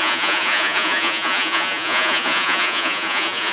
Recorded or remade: remade